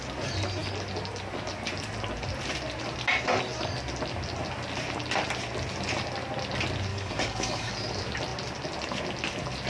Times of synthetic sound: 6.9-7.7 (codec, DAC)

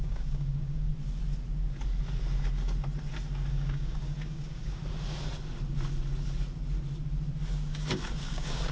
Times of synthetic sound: 0.0-0.9 (codec, DAC); 3.5-4.8; 7.7-8.7

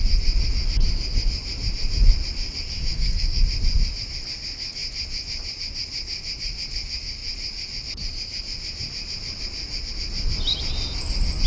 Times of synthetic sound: 2.9-3.4 (codec, DAC)

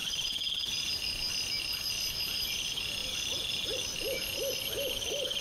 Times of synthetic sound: none

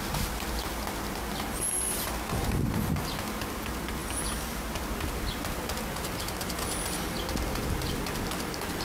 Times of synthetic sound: none

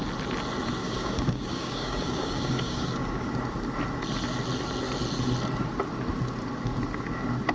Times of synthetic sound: 0.8-3.3 (codec, DAC)